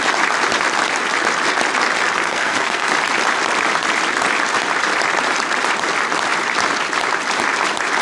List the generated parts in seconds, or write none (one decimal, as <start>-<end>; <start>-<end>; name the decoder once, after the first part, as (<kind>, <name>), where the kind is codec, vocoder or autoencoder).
2.2-2.9 (codec, SNAC)